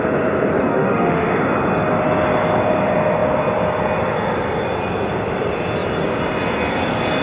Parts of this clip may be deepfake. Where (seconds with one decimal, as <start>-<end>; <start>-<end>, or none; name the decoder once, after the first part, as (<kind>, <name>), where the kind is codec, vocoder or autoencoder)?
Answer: 0.7-1.3 (autoencoder, DAC-VAE)